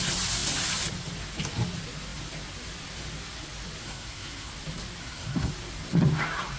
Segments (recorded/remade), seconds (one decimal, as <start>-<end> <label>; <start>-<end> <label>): 0.0-3.8 recorded; 3.8-4.5 remade; 4.5-5.0 recorded; 5.0-5.5 remade; 5.5-6.6 recorded